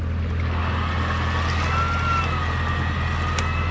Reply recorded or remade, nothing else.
recorded